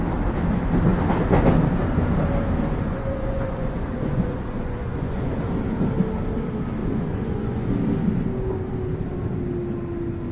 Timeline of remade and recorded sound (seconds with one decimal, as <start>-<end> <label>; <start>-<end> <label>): 0.0-2.9 recorded; 2.9-5.3 remade; 5.3-6.8 recorded; 6.8-7.7 remade; 7.7-10.3 recorded